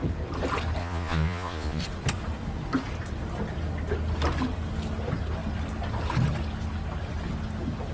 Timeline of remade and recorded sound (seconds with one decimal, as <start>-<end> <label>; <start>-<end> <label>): 0.0-0.8 recorded; 0.8-1.8 remade; 1.8-7.9 recorded